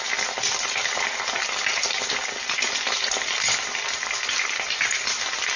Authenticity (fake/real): real